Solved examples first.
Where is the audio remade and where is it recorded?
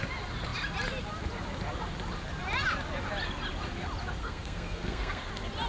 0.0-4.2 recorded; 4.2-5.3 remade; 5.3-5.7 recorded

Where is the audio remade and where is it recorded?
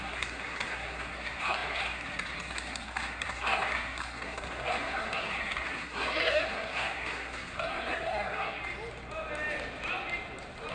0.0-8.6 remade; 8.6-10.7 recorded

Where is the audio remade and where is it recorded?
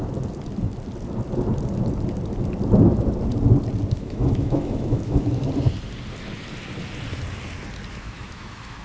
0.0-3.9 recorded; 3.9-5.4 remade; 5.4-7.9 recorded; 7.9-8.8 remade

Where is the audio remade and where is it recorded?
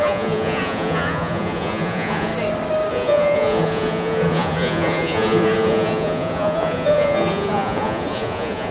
0.0-2.3 remade; 2.3-2.9 recorded; 2.9-8.7 remade